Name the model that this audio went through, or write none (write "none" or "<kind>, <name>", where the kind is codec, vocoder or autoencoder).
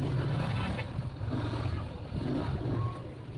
none